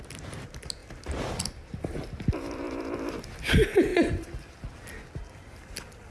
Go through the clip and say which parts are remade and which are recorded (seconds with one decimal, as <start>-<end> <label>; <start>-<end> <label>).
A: 0.0-6.1 recorded